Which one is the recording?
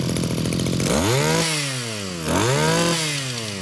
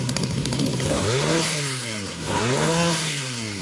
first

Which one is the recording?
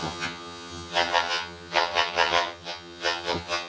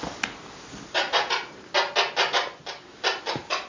second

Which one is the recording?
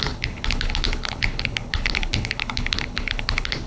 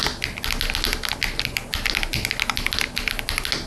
second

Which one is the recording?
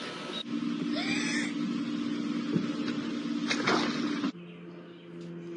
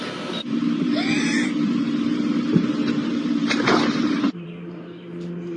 first